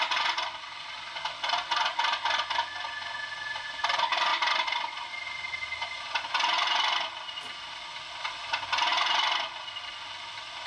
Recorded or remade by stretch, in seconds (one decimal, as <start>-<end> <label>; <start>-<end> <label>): 0.0-10.7 recorded